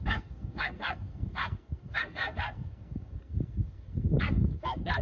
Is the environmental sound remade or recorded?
remade